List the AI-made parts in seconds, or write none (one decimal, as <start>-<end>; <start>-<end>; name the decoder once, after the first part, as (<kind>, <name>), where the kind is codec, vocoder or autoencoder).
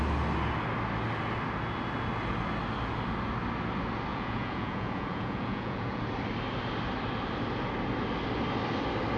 4.1-6.0 (vocoder, Vocos)